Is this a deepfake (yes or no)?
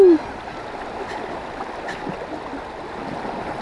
no